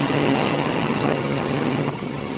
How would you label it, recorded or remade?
remade